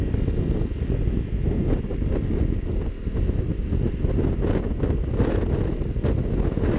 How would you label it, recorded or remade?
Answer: recorded